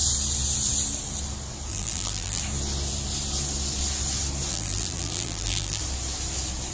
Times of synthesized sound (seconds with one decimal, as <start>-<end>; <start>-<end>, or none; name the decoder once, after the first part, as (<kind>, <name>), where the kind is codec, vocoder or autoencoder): 1.7-2.4 (vocoder, BigVGAN v2); 4.5-5.8